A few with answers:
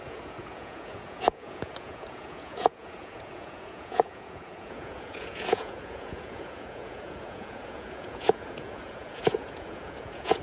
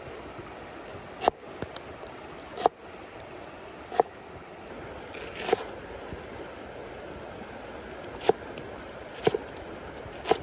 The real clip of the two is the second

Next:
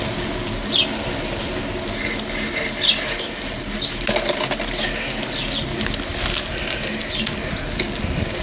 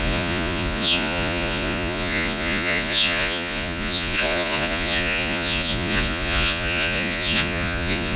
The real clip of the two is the first